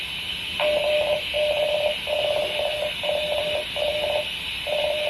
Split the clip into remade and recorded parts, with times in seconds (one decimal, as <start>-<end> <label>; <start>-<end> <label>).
0.0-5.1 recorded